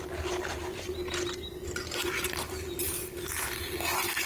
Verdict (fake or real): real